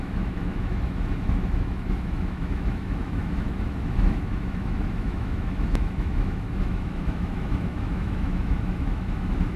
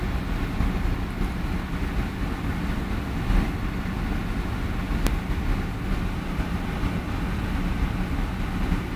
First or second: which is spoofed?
first